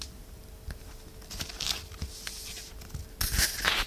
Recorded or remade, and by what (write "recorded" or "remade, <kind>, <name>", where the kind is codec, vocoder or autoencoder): recorded